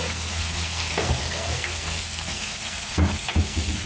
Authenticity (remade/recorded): remade